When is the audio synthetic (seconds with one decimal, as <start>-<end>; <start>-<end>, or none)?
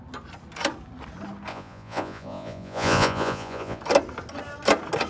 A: 1.5-3.8